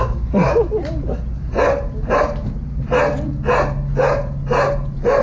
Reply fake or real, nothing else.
real